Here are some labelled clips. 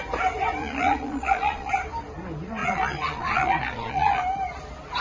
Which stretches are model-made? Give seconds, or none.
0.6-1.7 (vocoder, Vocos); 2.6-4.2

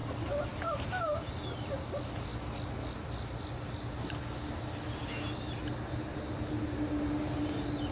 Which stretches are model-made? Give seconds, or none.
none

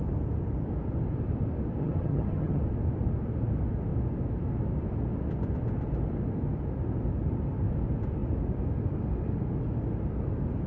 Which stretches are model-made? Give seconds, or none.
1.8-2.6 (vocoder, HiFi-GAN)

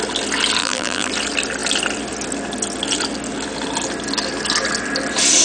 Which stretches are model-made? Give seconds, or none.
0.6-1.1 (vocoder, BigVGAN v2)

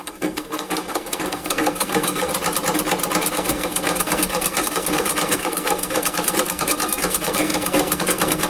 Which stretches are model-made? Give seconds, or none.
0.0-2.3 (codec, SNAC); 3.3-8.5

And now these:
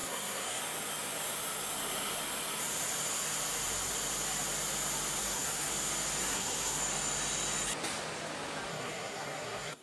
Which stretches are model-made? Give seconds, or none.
0.0-0.6 (codec, SNAC); 5.2-5.7; 6.2-6.8; 8.7-9.8